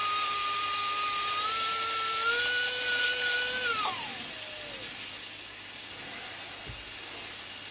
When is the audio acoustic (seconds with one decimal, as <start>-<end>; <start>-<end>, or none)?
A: 0.0-5.2; 5.9-7.7